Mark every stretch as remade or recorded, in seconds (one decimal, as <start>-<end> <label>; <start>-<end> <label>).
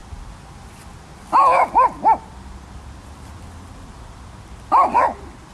0.0-5.5 recorded